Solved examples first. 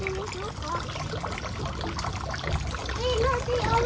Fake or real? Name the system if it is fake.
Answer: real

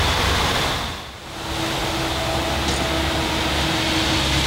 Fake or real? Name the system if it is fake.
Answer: real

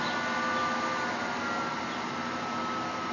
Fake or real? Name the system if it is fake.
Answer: real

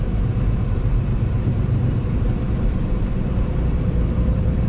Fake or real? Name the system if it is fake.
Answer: fake, vocoder, BigVGAN v2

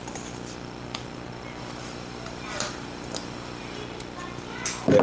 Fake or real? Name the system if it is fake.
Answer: real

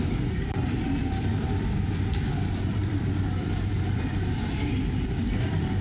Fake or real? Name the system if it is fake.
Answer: fake, vocoder, BigVGAN v2